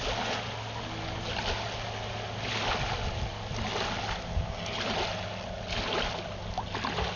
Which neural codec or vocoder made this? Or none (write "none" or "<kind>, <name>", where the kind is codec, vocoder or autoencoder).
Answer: none